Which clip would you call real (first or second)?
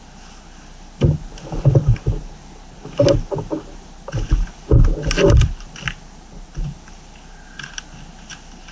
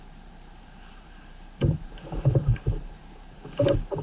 first